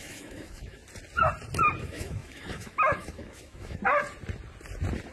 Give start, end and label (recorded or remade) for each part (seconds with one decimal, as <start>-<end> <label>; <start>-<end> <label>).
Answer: 0.0-0.8 remade; 0.8-1.8 recorded; 1.8-3.8 remade; 3.8-5.1 recorded